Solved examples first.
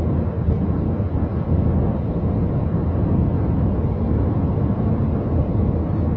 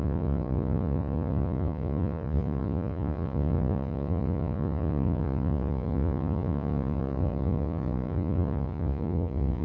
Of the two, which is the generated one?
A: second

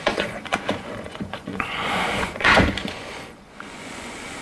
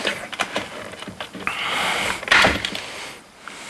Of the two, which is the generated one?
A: first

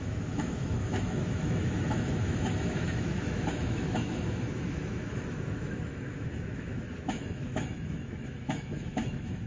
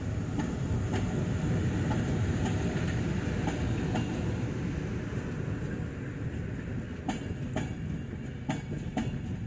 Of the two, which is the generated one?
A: first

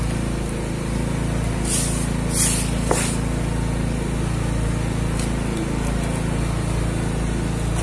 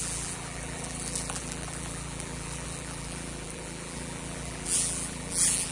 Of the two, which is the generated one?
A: second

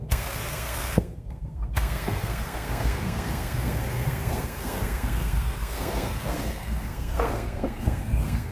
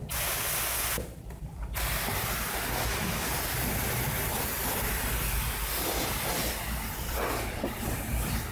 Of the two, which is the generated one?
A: first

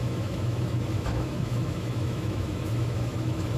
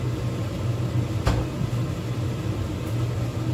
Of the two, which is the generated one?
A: first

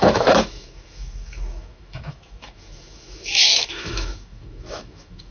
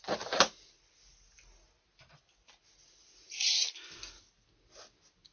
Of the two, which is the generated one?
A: first